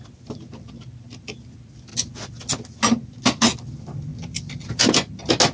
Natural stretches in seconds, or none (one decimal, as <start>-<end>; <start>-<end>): 0.0-5.5